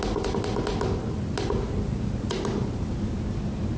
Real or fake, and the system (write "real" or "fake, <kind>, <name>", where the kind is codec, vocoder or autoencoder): real